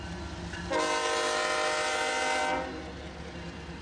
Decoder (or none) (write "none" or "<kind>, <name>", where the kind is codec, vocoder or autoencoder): none